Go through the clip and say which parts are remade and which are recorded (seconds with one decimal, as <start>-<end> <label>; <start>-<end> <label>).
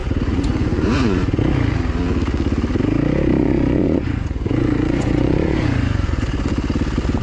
0.0-1.4 remade; 1.4-3.4 recorded; 3.4-6.2 remade; 6.2-7.2 recorded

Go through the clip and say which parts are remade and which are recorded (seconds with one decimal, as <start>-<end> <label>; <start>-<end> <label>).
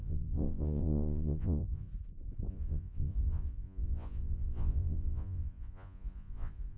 0.0-1.9 remade; 1.9-2.5 recorded; 2.5-6.8 remade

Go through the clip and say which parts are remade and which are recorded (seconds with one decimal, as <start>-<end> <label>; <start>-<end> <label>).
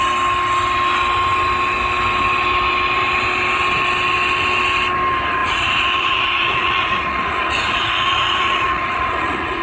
0.0-5.4 recorded; 5.4-9.6 remade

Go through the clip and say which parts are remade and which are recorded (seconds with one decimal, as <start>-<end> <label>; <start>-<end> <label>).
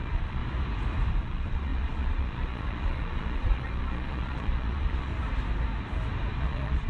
0.0-0.4 remade; 0.4-1.2 recorded; 1.2-5.1 remade; 5.1-6.4 recorded; 6.4-6.9 remade